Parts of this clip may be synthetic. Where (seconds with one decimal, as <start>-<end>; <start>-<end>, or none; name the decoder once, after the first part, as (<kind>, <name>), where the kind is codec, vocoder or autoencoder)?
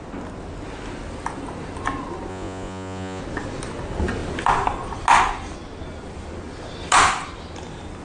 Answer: 2.3-3.2 (vocoder, Vocos)